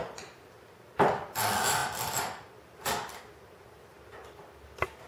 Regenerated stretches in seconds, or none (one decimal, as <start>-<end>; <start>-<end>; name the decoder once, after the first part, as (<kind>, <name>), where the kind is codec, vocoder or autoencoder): none